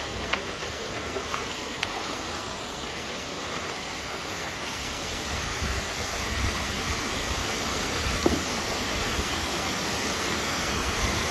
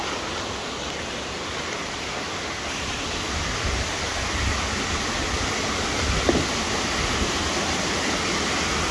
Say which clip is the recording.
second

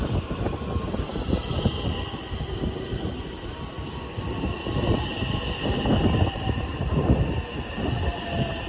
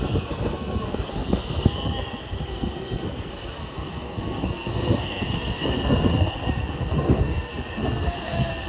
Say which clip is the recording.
first